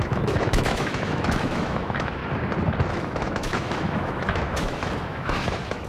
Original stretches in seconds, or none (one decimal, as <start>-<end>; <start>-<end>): 2.2-2.9